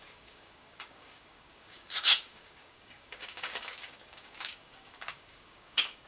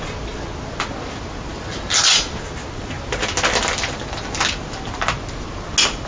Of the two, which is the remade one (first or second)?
first